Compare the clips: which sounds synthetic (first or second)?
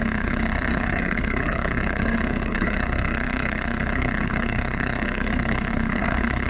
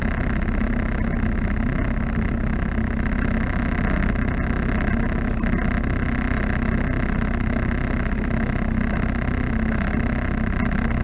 first